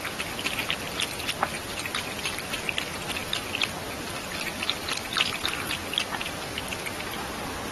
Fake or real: real